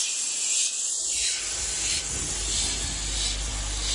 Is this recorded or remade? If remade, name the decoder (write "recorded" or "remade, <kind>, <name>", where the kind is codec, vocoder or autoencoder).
recorded